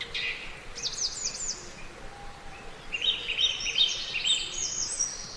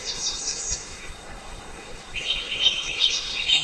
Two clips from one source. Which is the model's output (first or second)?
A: second